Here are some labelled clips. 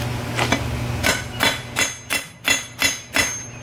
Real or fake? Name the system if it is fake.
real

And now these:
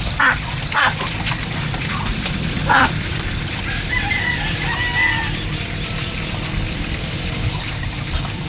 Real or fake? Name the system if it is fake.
fake, vocoder, BigVGAN v2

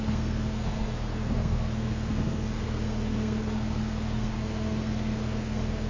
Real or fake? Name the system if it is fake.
fake, codec, SNAC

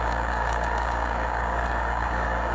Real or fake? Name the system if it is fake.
fake, codec, DAC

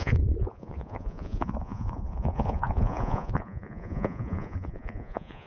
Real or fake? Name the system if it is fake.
fake, vocoder, Vocos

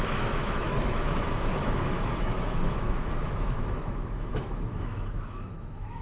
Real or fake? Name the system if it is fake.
fake, autoencoder, DAC-VAE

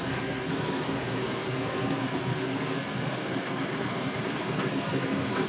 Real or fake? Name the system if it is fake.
fake, codec, SNAC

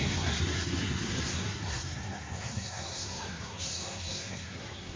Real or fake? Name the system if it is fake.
fake, codec, SNAC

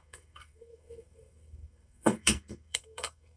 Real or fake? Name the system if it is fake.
fake, codec, SNAC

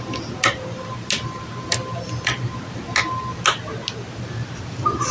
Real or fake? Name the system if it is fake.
real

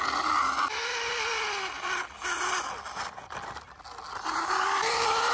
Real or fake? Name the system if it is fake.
real